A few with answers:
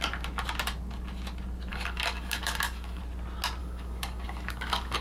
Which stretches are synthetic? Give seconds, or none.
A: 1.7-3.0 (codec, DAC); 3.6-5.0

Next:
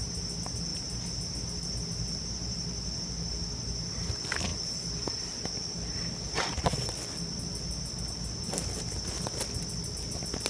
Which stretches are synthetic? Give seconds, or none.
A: none

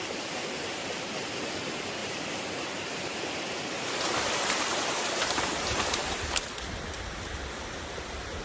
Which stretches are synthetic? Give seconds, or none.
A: 0.0-6.0 (vocoder, BigVGAN v2); 7.5-8.4

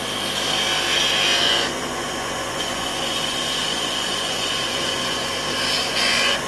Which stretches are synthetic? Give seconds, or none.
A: 1.4-5.3 (vocoder, Vocos); 5.8-6.5

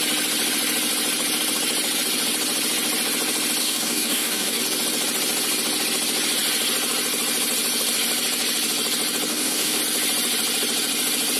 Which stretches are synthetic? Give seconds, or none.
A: 3.6-4.6 (codec, DAC); 9.3-9.8

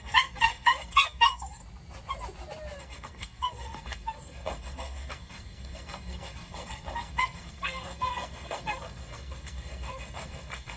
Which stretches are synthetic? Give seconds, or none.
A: 0.0-1.6 (codec, SNAC); 2.8-10.8

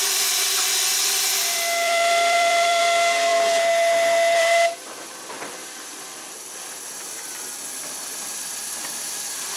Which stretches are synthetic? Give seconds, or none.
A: 0.0-2.8 (vocoder, BigVGAN v2)